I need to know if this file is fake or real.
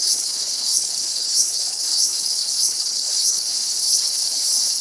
fake